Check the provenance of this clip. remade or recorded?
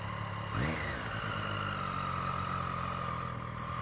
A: recorded